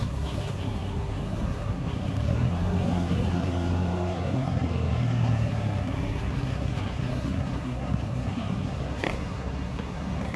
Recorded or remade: remade